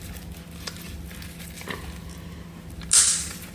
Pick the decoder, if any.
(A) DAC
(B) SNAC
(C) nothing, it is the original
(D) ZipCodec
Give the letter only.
C